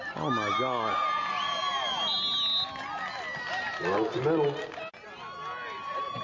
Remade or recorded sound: recorded